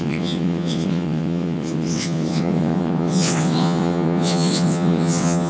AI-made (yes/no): yes